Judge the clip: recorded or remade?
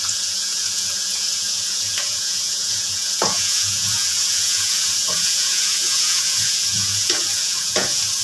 remade